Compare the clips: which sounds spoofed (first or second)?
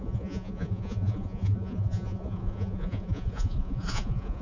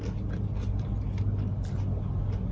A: first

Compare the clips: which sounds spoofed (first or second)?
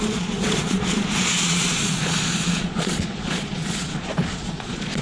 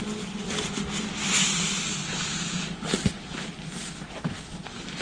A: first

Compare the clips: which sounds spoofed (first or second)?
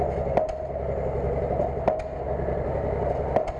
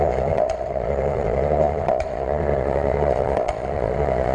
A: second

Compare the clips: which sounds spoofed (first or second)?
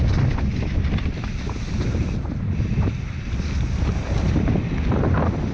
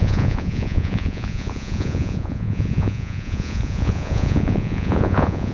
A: second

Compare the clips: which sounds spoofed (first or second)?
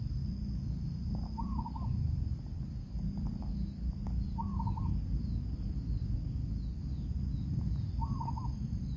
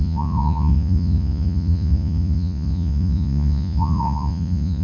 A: second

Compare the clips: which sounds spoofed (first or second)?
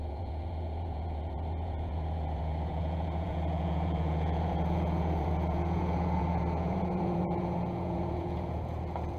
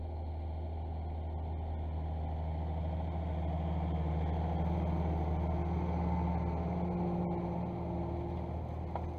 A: first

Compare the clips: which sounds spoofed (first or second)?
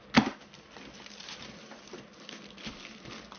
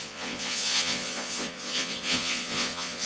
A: second